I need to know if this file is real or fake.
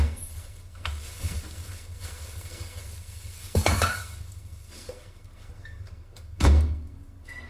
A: fake